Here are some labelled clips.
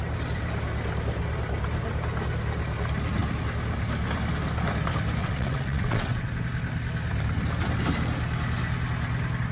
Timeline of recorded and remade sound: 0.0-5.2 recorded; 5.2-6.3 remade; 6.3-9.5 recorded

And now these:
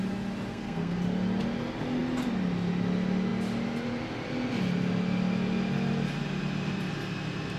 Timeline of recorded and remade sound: 0.0-0.5 recorded; 0.5-1.0 remade; 1.0-7.6 recorded

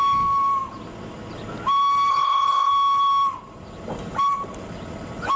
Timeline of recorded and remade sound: 0.0-2.1 recorded; 2.1-2.7 remade; 2.7-5.4 recorded

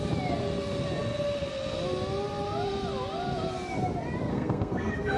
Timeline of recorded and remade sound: 0.0-4.3 recorded; 4.3-5.2 remade

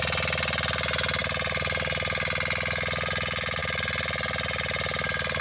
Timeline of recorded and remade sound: 0.0-5.4 recorded